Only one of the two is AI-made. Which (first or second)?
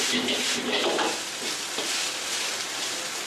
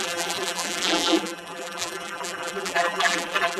second